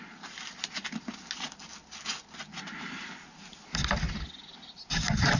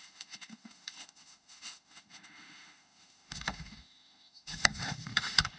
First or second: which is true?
first